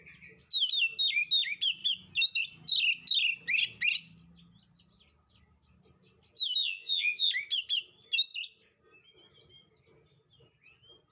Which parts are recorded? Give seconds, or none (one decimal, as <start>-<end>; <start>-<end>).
0.0-6.6; 7.3-11.1